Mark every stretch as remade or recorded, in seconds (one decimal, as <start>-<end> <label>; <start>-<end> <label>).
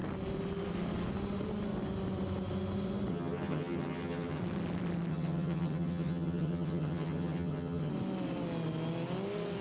0.0-3.1 recorded; 3.1-4.4 remade; 4.4-5.1 recorded; 5.1-7.9 remade; 7.9-9.6 recorded